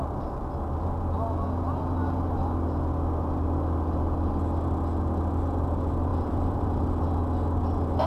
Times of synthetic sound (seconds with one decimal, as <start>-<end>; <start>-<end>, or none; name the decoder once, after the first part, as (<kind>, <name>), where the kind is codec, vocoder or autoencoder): 6.1-7.0 (vocoder, BigVGAN v2)